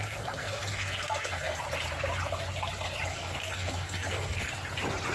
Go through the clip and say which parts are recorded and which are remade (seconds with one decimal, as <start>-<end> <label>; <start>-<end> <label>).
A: 0.0-1.6 remade; 1.6-3.1 recorded; 3.1-4.5 remade; 4.5-5.1 recorded